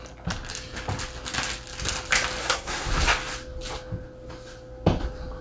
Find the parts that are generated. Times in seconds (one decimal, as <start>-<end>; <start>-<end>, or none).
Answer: 2.4-2.9